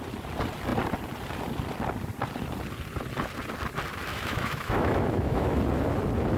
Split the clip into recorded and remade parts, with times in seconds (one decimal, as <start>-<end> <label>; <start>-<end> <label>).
0.0-4.1 recorded; 4.1-5.6 remade; 5.6-6.4 recorded